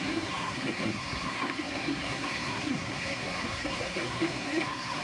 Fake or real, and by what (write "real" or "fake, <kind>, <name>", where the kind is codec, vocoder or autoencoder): fake, codec, SNAC